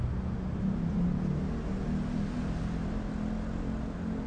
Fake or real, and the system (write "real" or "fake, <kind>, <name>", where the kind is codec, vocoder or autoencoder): real